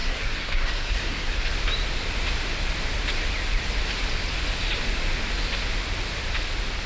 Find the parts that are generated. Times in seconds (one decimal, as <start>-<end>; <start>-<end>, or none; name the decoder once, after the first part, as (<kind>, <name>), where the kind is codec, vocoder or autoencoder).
0.0-1.4 (codec, SNAC)